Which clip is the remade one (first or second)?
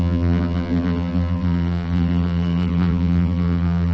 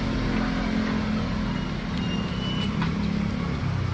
first